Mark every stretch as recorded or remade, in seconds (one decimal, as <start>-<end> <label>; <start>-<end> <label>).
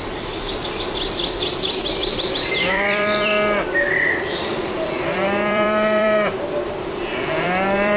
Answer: 0.0-2.0 recorded; 2.0-3.3 remade; 3.3-4.5 recorded; 4.5-8.0 remade